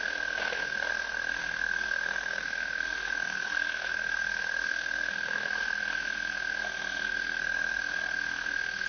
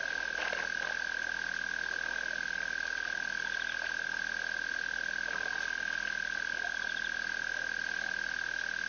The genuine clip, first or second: second